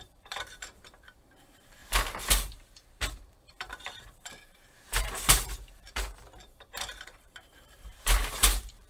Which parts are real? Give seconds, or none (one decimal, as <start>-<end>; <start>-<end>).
1.8-2.3

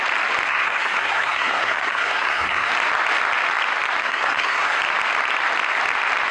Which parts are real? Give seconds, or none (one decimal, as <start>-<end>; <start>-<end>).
0.0-0.5; 2.7-4.0; 4.8-6.3

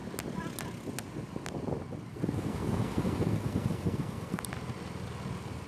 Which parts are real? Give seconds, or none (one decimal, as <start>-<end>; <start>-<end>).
0.0-2.1; 4.4-5.7